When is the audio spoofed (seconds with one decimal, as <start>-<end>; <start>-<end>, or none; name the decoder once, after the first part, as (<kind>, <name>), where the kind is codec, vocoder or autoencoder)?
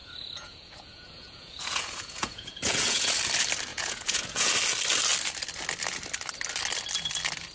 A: 0.0-3.1 (vocoder, Vocos); 3.7-4.5